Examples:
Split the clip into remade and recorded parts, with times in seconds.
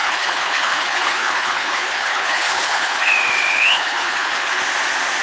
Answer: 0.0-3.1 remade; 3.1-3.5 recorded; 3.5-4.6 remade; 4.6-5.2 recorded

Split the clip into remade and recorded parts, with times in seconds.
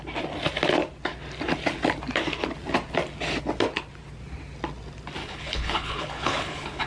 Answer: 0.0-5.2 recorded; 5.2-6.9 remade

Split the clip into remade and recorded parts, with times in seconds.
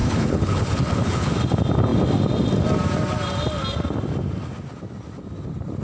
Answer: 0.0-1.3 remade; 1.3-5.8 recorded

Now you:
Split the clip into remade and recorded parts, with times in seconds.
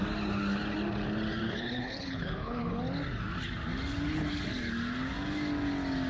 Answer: 0.0-1.4 recorded; 1.4-2.8 remade; 2.8-6.1 recorded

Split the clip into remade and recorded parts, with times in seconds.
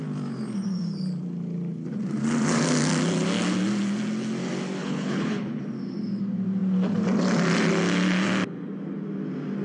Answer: 0.0-4.8 recorded; 4.8-5.6 remade; 5.6-9.6 recorded